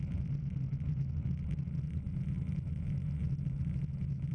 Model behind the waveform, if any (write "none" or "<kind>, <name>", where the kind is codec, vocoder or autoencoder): none